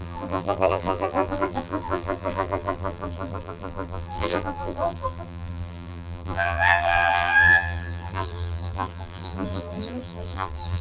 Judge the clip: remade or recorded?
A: remade